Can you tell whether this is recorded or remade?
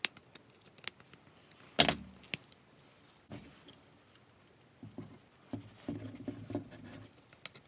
recorded